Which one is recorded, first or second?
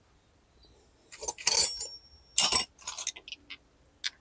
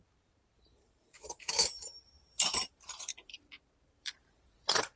first